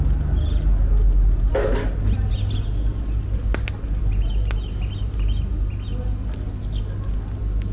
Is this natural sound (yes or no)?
yes